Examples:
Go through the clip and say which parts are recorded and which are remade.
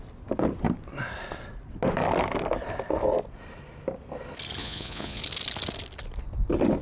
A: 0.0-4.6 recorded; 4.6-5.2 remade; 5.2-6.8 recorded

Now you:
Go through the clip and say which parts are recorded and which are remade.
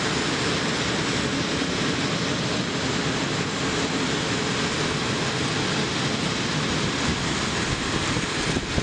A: 0.0-8.8 recorded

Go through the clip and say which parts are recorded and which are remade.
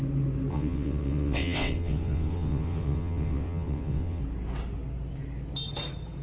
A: 0.0-0.5 recorded; 0.5-4.2 remade; 4.2-6.2 recorded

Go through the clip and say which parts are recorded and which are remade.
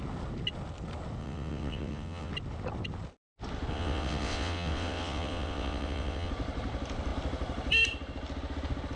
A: 0.0-1.2 recorded; 1.2-2.3 remade; 2.3-3.7 recorded; 3.7-6.3 remade; 6.3-9.0 recorded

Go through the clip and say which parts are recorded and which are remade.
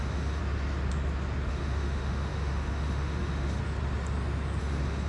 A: 0.0-0.4 remade; 0.4-1.5 recorded; 1.5-3.6 remade; 3.6-4.6 recorded; 4.6-5.1 remade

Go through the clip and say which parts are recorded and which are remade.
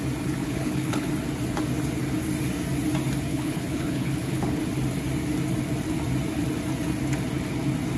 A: 0.0-0.4 recorded; 0.4-1.1 remade; 1.1-3.3 recorded; 3.3-4.6 remade; 4.6-8.0 recorded